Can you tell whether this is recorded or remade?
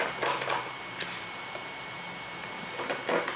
recorded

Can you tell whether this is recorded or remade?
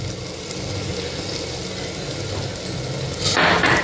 recorded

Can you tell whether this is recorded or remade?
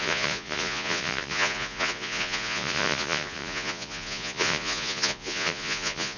remade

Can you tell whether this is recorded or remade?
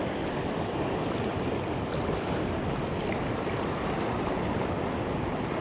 recorded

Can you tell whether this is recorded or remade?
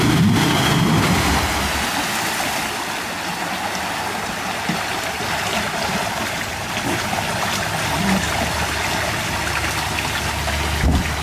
recorded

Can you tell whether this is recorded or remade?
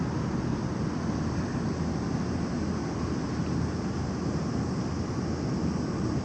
recorded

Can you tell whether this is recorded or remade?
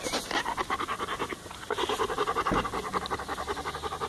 recorded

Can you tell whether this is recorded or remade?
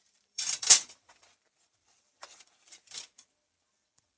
remade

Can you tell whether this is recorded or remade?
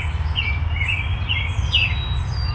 recorded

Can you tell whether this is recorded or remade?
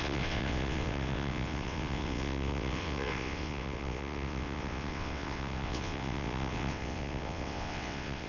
remade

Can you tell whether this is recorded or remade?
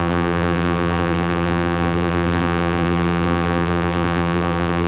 remade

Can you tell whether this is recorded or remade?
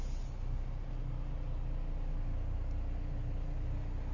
recorded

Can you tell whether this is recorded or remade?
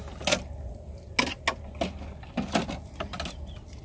recorded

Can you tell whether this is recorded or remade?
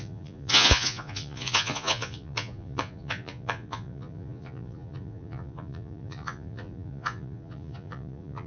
remade